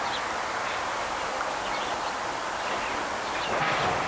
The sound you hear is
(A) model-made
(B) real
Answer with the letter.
B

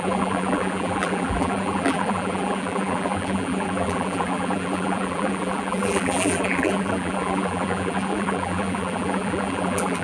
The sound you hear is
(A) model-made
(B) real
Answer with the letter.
A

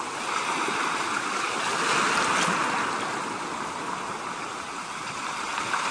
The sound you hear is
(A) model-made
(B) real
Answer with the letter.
B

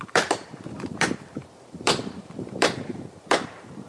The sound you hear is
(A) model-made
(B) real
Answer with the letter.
A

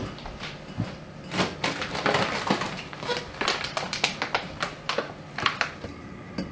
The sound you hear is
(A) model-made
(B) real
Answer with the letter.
A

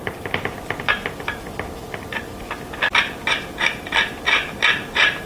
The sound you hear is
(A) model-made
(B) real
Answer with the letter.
B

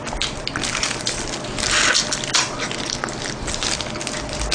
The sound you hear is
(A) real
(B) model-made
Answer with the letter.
A